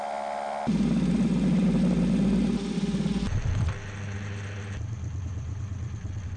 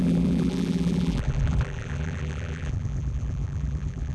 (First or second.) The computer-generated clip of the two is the second